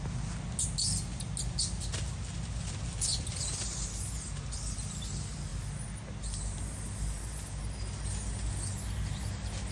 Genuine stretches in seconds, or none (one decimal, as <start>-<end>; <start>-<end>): 0.0-9.7